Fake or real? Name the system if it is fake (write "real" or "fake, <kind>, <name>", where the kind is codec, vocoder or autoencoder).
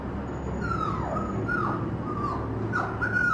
real